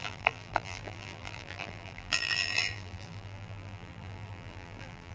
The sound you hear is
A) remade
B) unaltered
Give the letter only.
A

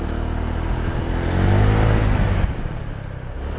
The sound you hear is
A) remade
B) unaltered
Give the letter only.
B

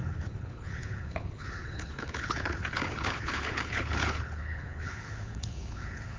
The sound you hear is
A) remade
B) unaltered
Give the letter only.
A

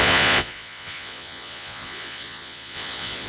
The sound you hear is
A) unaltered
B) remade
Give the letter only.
B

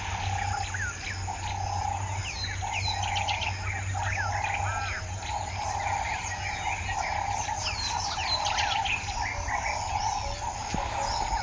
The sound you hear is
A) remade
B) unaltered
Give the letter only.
B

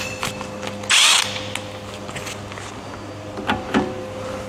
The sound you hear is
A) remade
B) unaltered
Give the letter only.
B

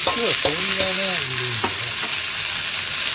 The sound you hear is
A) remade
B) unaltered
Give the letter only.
B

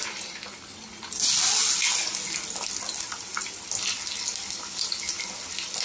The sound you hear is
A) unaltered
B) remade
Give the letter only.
A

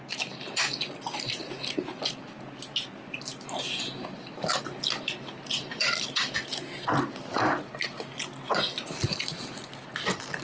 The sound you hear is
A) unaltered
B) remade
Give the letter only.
A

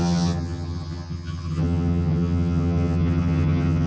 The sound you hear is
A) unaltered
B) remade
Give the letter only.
B